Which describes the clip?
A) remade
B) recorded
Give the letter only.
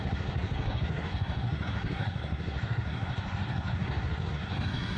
A